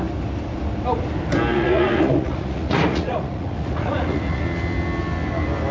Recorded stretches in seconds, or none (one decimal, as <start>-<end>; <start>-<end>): 0.0-1.5; 4.4-5.7